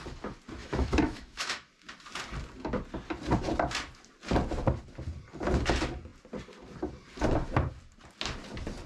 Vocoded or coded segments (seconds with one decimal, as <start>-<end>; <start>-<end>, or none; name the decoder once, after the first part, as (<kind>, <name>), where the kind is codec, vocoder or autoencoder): 0.6-1.7 (autoencoder, DAC-VAE)